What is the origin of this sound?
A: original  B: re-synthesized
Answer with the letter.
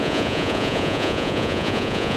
B